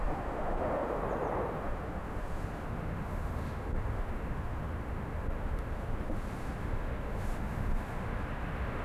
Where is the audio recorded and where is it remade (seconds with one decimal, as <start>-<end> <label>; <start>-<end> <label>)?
0.0-1.0 remade; 1.0-1.5 recorded; 1.5-8.8 remade